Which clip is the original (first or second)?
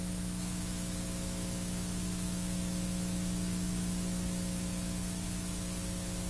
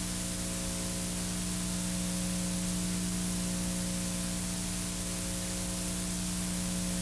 second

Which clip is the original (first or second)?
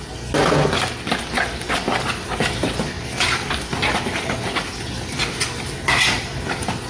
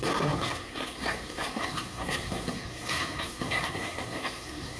first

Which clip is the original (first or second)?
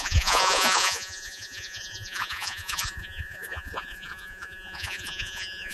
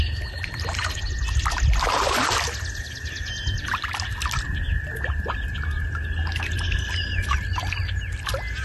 second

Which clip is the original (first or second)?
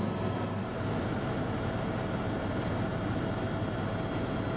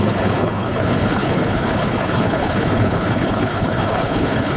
first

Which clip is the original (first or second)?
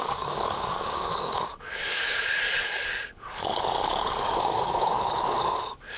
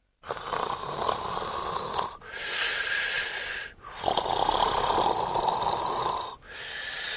second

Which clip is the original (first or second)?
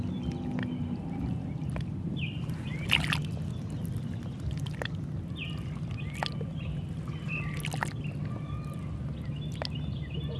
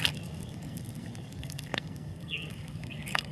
first